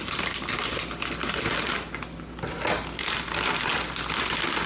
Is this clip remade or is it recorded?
recorded